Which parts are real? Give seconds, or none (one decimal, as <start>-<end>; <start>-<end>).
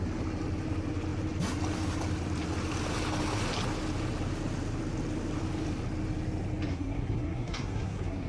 0.0-6.7